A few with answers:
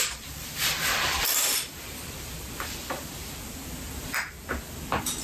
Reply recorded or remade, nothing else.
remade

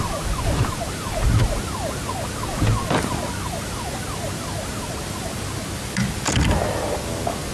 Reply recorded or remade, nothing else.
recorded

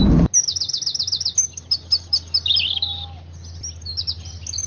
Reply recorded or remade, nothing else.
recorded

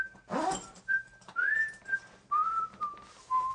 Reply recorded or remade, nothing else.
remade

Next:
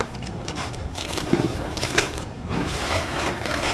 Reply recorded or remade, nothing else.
remade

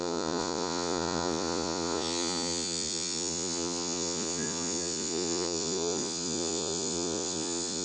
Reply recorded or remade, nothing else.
remade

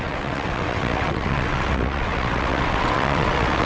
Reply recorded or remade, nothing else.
remade